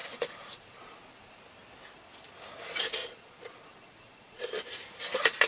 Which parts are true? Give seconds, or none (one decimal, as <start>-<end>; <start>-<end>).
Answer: 1.4-3.0; 4.5-5.5